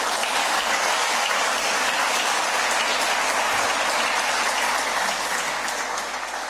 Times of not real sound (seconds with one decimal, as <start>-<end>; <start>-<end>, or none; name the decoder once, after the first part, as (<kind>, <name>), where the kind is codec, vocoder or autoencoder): 0.4-2.5 (codec, DAC)